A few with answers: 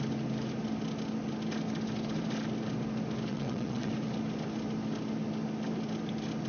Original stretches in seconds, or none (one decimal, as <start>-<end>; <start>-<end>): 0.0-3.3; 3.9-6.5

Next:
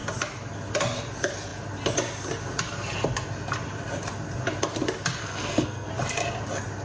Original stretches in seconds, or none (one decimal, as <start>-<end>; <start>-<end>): 0.0-5.2; 5.9-6.8

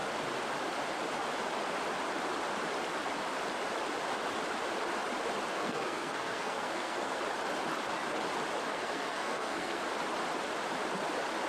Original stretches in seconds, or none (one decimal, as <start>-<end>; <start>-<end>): 0.0-5.5; 7.2-8.7; 9.8-11.5